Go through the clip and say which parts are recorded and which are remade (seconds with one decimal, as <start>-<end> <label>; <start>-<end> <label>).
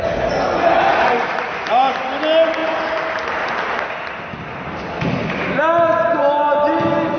0.0-7.2 recorded